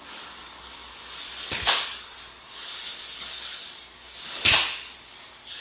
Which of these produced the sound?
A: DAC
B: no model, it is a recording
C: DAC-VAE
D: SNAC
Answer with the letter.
A